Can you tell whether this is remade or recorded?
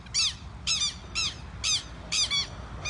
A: recorded